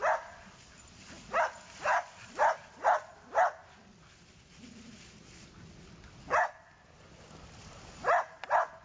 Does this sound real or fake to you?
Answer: real